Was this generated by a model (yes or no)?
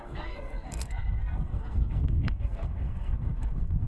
yes